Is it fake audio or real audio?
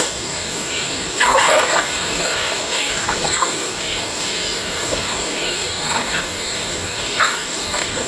fake